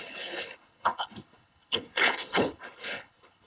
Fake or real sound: fake